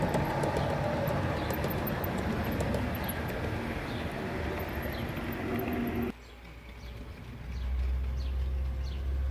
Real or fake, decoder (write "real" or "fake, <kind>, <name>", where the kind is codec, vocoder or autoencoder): real